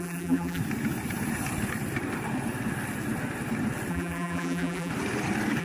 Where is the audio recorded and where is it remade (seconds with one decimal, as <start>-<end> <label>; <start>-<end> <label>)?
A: 0.0-0.6 remade; 0.6-3.9 recorded; 3.9-4.9 remade; 4.9-5.6 recorded